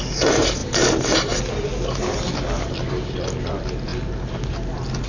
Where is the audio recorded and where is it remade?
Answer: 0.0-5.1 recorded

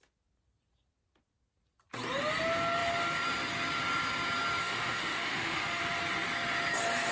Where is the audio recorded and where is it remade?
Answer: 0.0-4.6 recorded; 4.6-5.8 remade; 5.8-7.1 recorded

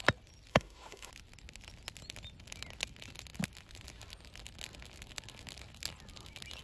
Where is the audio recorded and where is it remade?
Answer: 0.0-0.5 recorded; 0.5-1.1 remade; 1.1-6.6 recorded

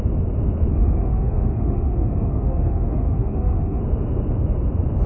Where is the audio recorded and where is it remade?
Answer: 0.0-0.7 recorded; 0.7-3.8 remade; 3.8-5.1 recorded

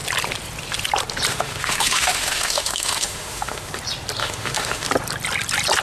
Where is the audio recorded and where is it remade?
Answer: 0.0-1.3 recorded; 1.3-3.7 remade; 3.7-4.2 recorded; 4.2-4.9 remade; 4.9-5.8 recorded

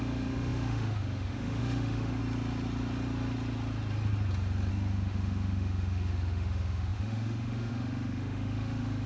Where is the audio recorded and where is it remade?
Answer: 0.0-2.2 remade; 2.2-4.7 recorded; 4.7-9.1 remade

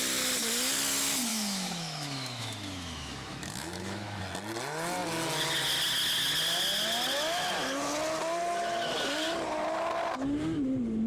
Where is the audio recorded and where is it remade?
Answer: 0.0-1.3 recorded; 1.3-4.2 remade; 4.2-11.1 recorded

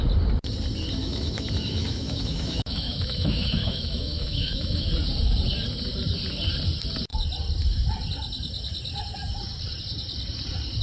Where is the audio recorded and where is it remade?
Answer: 0.0-1.0 recorded; 1.0-4.9 remade; 4.9-10.8 recorded